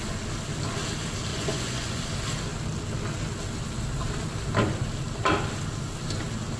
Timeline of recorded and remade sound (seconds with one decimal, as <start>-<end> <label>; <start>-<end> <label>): 0.0-1.3 recorded; 1.3-2.0 remade; 2.0-6.6 recorded